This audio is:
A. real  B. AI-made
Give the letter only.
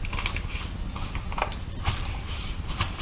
A